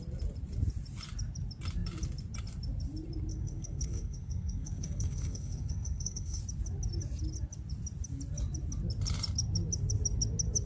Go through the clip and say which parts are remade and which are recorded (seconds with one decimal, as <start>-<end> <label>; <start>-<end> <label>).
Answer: 0.0-3.3 recorded; 3.3-6.4 remade; 6.4-10.7 recorded